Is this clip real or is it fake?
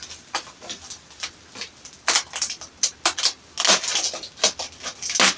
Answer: real